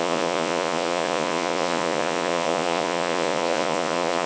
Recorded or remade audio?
remade